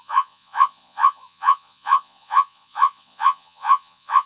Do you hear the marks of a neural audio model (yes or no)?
yes